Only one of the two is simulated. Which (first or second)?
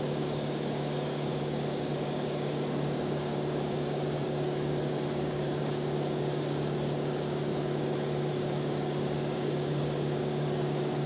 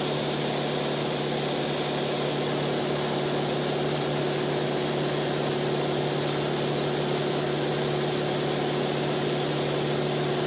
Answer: first